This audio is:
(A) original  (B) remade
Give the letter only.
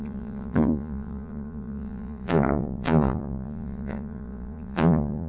B